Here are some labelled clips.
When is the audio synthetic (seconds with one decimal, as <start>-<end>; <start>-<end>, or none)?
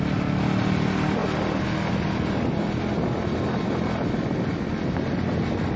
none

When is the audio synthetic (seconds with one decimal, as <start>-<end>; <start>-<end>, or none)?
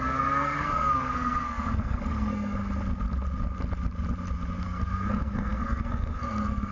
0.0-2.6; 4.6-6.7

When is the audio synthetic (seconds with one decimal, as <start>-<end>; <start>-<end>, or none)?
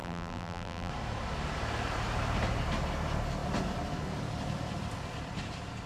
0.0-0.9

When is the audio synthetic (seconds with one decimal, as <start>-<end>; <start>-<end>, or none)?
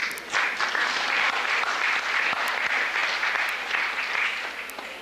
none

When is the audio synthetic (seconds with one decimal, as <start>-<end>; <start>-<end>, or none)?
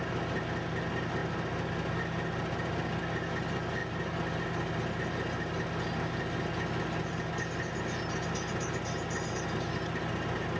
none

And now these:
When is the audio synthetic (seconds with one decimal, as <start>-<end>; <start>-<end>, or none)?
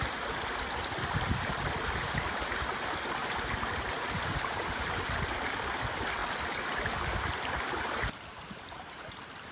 3.2-4.9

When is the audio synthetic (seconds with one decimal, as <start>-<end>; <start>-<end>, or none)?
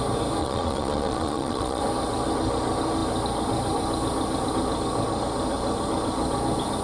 0.4-1.8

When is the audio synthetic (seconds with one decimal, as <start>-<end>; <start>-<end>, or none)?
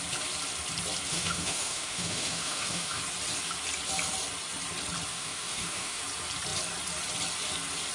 1.1-3.0; 5.1-6.0